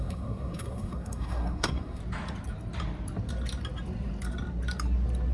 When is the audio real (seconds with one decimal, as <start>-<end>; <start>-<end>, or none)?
2.0-5.3